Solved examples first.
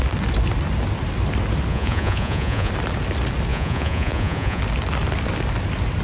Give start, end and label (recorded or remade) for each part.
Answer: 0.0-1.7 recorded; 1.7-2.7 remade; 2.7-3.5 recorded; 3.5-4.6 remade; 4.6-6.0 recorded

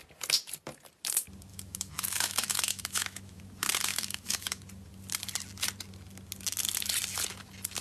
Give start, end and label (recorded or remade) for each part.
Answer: 0.0-1.5 recorded; 1.5-3.4 remade; 3.4-3.9 recorded; 3.9-4.6 remade; 4.6-7.8 recorded

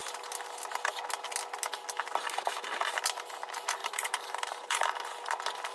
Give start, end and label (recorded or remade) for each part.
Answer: 0.0-3.8 recorded; 3.8-4.9 remade; 4.9-5.7 recorded